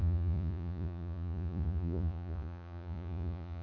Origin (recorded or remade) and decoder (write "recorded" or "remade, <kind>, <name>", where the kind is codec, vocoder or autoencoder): remade, vocoder, Vocos